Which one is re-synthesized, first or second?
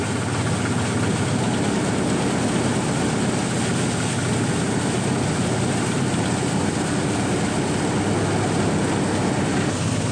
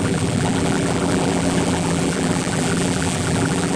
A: second